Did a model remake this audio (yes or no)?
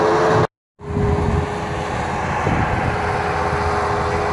no